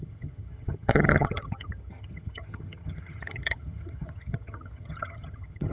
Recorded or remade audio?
remade